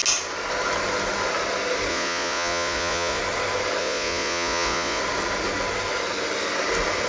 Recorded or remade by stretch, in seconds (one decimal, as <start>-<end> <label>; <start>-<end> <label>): 0.0-1.9 recorded; 1.9-3.2 remade; 3.2-3.8 recorded; 3.8-5.0 remade; 5.0-7.1 recorded